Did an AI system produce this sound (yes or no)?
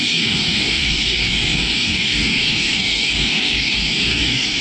yes